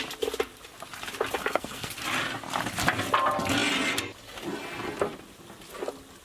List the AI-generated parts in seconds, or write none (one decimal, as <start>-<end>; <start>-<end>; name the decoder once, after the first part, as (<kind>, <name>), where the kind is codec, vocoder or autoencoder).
1.4-1.9 (codec, SNAC)